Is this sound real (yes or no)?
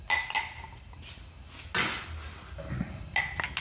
yes